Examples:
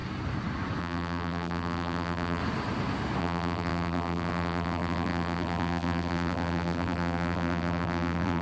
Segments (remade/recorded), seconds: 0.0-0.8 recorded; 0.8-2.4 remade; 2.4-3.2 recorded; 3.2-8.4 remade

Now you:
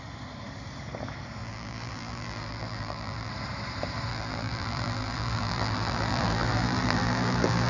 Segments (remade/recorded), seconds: 0.0-1.4 recorded; 1.4-3.3 remade; 3.3-4.1 recorded; 4.1-7.7 remade

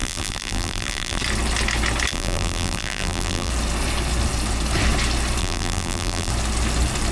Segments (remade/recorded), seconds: 0.0-1.2 remade; 1.2-2.1 recorded; 2.1-3.5 remade; 3.5-5.4 recorded; 5.4-6.3 remade; 6.3-7.1 recorded

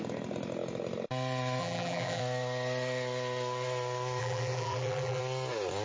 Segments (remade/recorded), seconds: 0.0-1.6 recorded; 1.6-2.2 remade; 2.2-4.2 recorded; 4.2-5.2 remade; 5.2-5.8 recorded